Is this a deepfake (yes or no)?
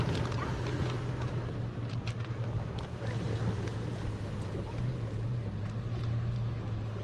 no